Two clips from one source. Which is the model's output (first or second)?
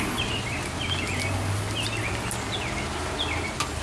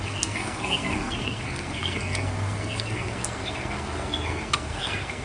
second